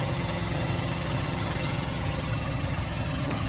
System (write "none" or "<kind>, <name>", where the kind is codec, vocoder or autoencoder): vocoder, HiFi-GAN